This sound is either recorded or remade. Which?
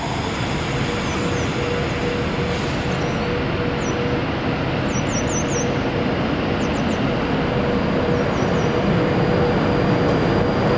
recorded